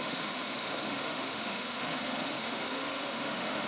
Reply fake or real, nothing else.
fake